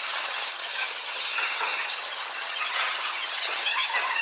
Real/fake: fake